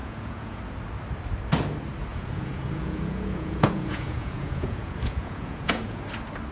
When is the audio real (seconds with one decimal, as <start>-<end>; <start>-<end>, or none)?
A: 0.6-2.1; 6.0-6.5